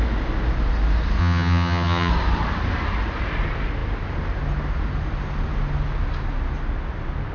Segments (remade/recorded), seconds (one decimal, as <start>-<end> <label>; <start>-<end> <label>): 0.0-1.2 recorded; 1.2-2.1 remade; 2.1-7.3 recorded

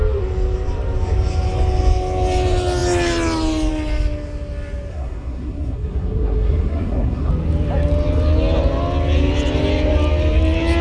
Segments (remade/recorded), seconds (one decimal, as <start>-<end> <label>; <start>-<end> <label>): 0.0-4.9 recorded; 4.9-7.3 remade; 7.3-10.8 recorded

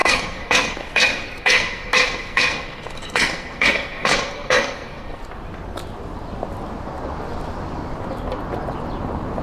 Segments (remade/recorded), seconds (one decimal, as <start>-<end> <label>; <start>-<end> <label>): 0.0-5.2 remade; 5.2-9.4 recorded

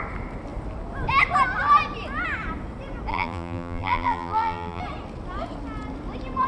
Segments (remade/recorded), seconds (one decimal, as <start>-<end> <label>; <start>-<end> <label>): 0.0-3.1 recorded; 3.1-4.8 remade; 4.8-6.5 recorded

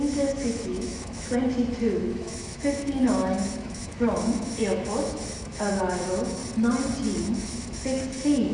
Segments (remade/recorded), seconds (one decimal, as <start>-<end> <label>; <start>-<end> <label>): 0.0-6.4 remade; 6.4-7.2 recorded; 7.2-8.5 remade

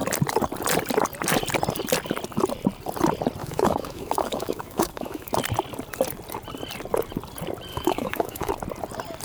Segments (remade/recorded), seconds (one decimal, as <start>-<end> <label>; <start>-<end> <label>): 0.0-3.4 recorded; 3.4-5.3 remade; 5.3-7.7 recorded; 7.7-8.5 remade; 8.5-9.2 recorded

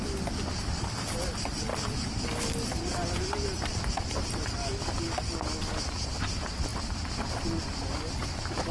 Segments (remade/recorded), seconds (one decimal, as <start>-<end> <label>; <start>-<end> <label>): 0.0-8.7 recorded